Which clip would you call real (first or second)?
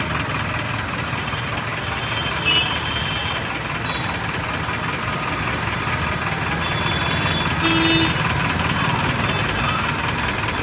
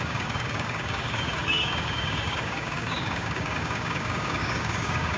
first